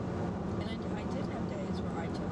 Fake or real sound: real